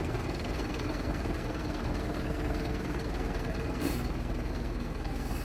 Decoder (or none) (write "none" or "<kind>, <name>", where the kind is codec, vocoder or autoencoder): codec, SNAC